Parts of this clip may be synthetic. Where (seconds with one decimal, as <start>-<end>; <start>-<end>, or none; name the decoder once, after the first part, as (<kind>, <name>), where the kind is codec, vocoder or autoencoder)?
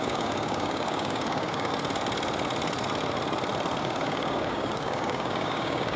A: 0.0-1.7 (codec, DAC); 3.8-6.0